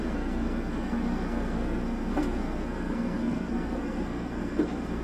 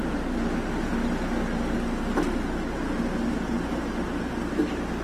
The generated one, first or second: first